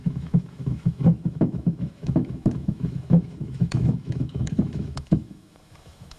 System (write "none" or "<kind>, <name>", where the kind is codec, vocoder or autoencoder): autoencoder, DAC-VAE